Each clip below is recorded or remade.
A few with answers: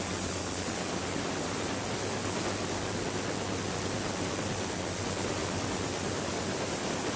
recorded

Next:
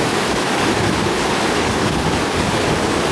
remade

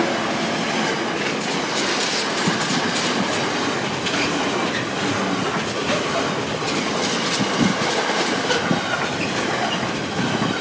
recorded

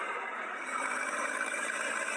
remade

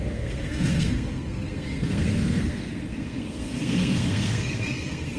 remade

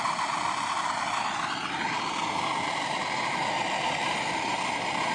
recorded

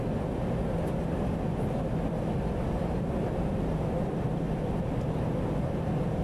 recorded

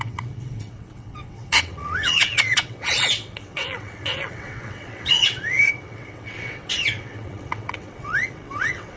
remade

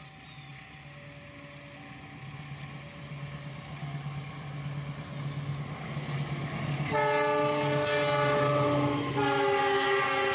recorded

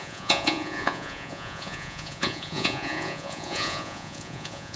remade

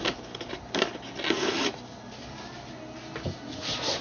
recorded